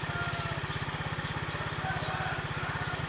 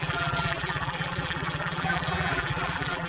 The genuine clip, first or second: first